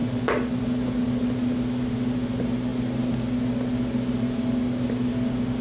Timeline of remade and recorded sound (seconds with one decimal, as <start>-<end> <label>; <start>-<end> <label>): 0.0-5.6 recorded